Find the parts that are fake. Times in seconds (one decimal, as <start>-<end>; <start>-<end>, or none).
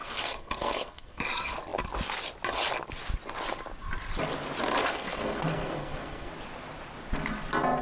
0.0-1.2; 4.8-6.3